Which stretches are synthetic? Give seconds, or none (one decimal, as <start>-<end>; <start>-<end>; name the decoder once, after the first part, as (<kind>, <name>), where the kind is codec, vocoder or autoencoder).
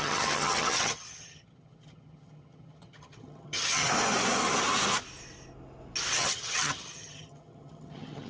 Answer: 0.0-3.8 (vocoder, HiFi-GAN); 6.2-8.3